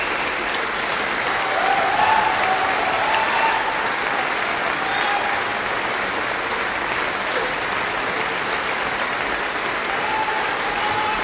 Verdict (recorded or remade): recorded